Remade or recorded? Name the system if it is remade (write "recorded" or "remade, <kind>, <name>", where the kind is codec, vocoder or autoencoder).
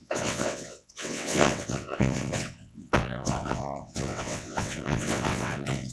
remade, vocoder, WaveNeXt